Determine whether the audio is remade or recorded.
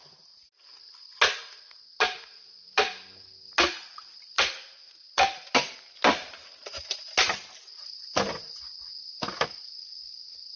recorded